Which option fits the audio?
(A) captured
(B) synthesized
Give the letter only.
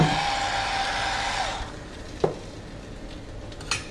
A